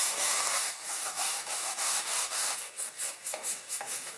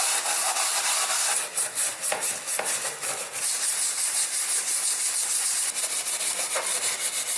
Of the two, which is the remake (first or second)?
first